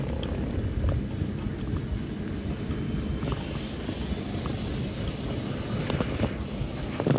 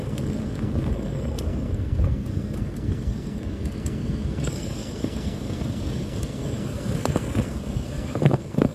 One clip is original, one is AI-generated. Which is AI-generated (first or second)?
second